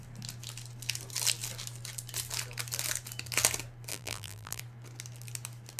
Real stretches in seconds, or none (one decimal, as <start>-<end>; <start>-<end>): 0.0-3.9; 4.6-5.8